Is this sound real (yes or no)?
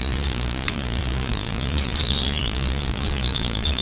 no